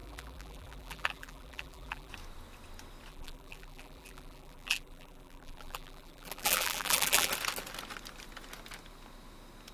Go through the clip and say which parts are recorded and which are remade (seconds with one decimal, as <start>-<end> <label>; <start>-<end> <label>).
0.0-2.1 remade; 2.1-3.1 recorded; 3.1-7.3 remade; 7.3-9.7 recorded